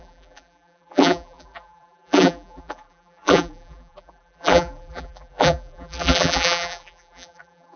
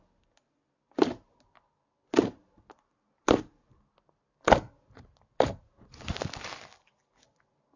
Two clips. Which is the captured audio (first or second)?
second